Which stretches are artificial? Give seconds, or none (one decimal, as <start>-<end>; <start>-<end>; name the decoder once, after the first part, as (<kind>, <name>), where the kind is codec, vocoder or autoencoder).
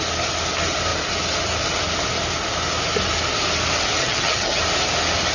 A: 4.0-4.6 (vocoder, HiFi-GAN)